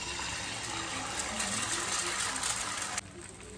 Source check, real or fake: real